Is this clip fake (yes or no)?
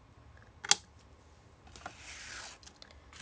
no